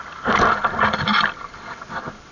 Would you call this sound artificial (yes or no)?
no